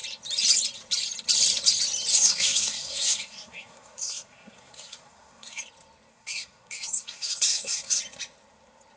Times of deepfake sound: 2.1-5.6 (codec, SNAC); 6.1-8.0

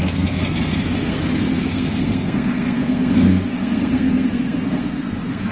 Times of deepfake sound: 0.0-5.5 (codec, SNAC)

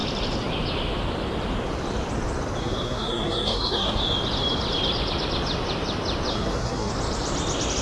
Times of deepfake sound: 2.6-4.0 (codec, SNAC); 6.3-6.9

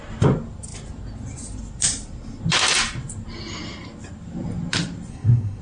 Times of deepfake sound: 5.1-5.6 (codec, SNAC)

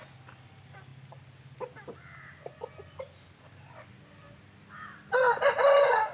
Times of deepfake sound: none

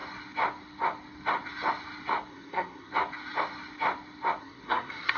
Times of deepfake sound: 2.3-2.9 (codec, SNAC); 4.4-5.2